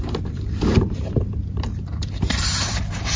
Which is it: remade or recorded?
remade